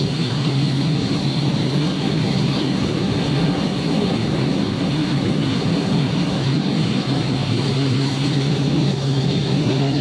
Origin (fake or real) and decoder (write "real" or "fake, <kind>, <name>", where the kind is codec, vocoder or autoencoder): fake, codec, SNAC